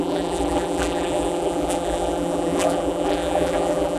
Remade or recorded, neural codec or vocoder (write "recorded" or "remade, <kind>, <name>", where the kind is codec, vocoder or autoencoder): remade, vocoder, BigVGAN v2